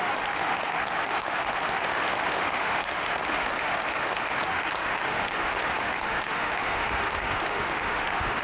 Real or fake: fake